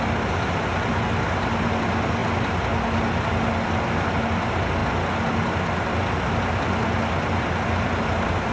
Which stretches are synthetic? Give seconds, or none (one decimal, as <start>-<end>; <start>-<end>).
none